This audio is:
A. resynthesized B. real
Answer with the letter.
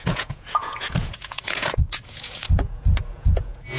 A